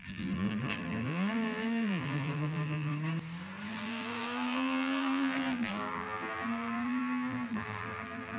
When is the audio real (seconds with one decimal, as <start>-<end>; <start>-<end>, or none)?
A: 2.9-3.7